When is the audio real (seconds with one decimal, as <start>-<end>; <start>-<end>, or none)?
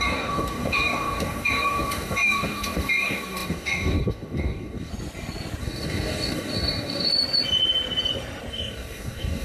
4.9-5.6; 7.1-8.5